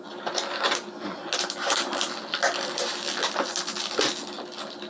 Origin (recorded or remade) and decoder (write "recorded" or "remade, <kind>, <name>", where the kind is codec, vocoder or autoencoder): recorded